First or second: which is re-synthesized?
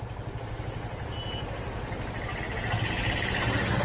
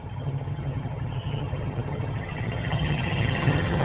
second